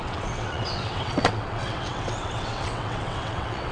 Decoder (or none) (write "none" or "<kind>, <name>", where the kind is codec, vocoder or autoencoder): vocoder, WaveNeXt